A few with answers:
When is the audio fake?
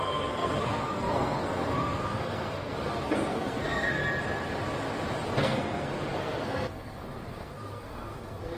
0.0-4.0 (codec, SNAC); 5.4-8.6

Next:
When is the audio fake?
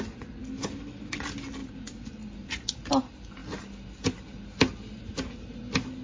0.4-1.2 (autoencoder, DAC-VAE)